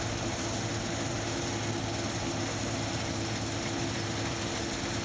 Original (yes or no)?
yes